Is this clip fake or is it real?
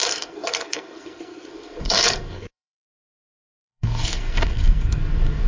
fake